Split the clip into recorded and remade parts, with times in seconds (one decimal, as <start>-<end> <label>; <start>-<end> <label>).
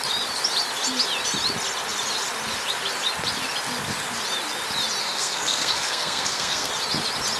0.0-5.0 recorded; 5.0-6.7 remade; 6.7-7.4 recorded